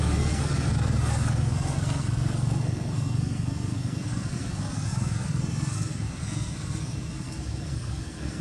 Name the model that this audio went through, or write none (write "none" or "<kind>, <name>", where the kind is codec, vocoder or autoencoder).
codec, SNAC